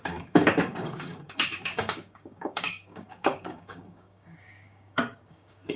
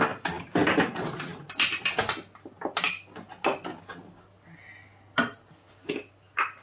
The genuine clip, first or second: second